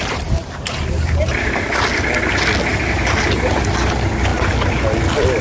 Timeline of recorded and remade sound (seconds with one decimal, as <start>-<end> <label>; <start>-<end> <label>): 0.0-0.4 recorded; 0.4-1.3 remade; 1.3-2.7 recorded; 2.7-3.6 remade; 3.6-5.4 recorded